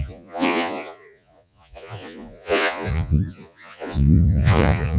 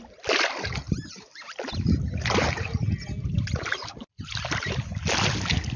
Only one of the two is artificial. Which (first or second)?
first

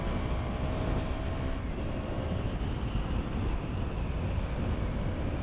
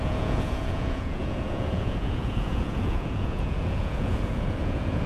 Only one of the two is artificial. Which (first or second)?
second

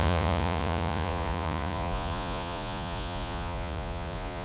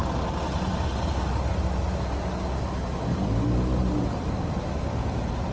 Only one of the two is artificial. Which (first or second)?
first